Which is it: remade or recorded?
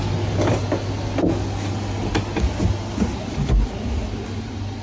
recorded